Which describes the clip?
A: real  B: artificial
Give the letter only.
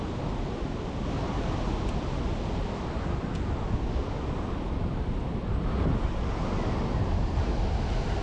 A